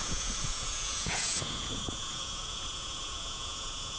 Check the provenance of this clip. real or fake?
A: fake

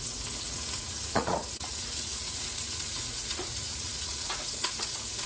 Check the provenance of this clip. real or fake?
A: fake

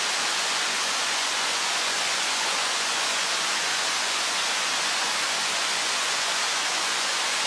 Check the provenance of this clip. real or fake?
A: fake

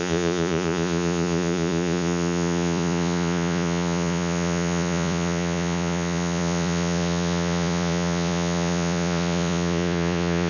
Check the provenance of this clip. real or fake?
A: fake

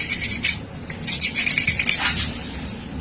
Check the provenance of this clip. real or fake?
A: real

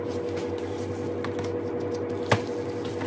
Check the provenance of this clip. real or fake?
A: real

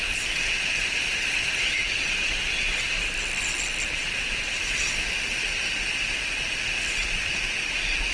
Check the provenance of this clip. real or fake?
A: real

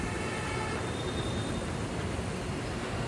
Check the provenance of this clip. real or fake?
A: real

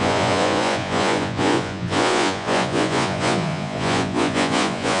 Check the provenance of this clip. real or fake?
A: fake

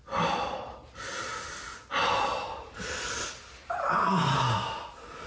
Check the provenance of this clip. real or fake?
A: real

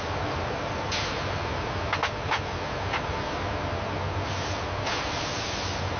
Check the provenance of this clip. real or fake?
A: real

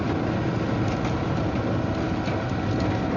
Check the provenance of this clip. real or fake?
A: real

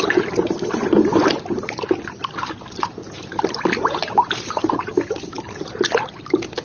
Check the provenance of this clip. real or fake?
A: real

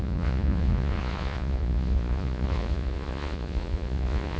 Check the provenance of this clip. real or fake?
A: fake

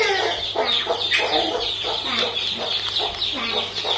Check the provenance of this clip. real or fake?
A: real